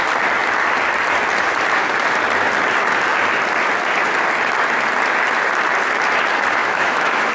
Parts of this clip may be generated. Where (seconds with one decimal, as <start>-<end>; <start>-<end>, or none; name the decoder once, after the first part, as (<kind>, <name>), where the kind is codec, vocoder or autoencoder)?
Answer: 6.6-7.3 (autoencoder, DAC-VAE)